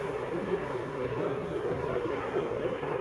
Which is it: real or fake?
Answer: fake